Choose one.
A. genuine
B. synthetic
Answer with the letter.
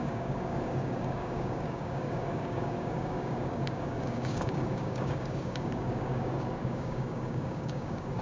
B